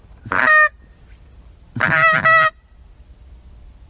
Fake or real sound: real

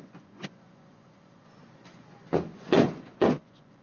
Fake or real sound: fake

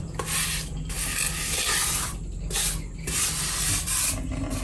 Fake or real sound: real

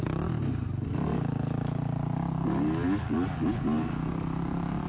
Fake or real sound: real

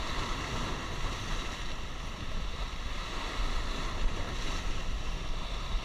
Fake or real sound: real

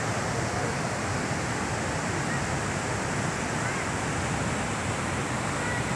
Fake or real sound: real